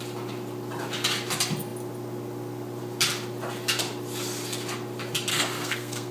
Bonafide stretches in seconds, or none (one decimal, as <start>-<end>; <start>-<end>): 0.0-5.3